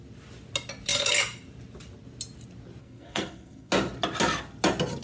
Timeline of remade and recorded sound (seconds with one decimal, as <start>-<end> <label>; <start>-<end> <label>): 0.0-2.8 recorded; 2.8-3.7 remade; 3.7-5.0 recorded